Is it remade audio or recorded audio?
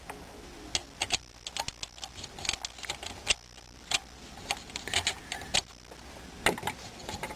recorded